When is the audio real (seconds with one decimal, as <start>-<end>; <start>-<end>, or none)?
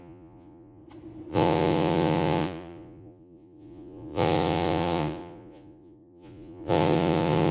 0.8-1.3